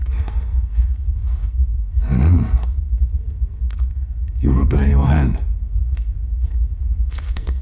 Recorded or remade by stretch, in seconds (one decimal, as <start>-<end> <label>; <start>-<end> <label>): 0.0-7.6 remade